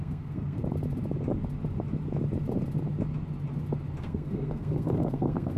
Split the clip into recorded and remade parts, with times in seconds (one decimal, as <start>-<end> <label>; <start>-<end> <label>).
0.0-0.6 remade; 0.6-4.0 recorded; 4.0-5.6 remade